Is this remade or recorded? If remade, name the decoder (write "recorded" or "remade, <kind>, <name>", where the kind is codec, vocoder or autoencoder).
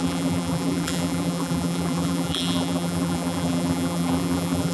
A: remade, vocoder, BigVGAN v2